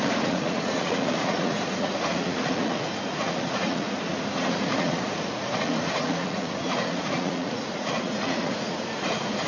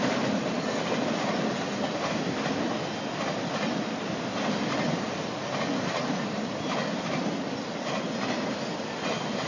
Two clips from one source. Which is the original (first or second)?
second